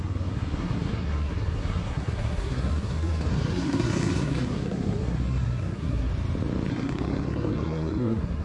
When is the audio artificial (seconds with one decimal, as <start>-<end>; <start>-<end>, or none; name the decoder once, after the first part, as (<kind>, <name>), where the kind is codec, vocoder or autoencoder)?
0.0-6.1 (codec, SNAC); 6.7-8.4